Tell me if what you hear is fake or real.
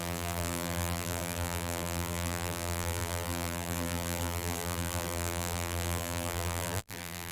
fake